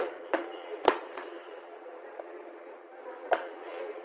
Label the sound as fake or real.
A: fake